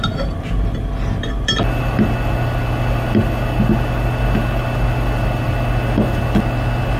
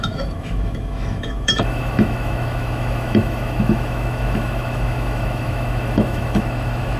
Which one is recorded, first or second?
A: first